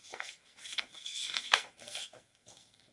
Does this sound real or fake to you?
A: fake